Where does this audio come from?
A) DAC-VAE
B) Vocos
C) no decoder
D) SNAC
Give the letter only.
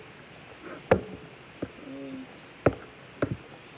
C